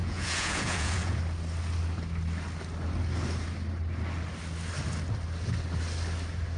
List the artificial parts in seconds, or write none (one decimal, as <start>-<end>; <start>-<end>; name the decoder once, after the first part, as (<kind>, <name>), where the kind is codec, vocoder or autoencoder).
0.0-1.2 (vocoder, Vocos)